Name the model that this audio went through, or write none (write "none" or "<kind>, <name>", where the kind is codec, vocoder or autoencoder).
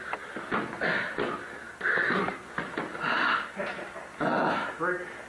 none